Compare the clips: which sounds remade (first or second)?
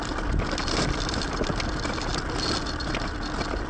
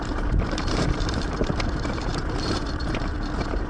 second